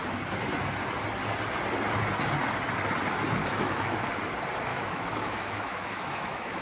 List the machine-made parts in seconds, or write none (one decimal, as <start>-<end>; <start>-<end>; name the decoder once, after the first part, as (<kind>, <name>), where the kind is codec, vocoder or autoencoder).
3.4-4.1 (autoencoder, DAC-VAE); 4.7-6.6